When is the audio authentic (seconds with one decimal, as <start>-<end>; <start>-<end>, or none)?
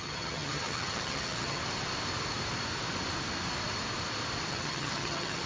1.6-4.5